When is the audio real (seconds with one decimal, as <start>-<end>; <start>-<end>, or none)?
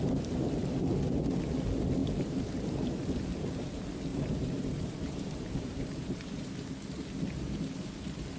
0.0-2.0; 2.6-4.1; 6.6-8.4